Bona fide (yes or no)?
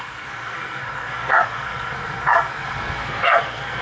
no